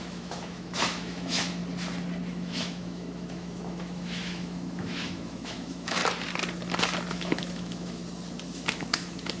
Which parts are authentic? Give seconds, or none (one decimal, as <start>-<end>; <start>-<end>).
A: 1.6-2.3; 6.0-7.1; 8.0-8.5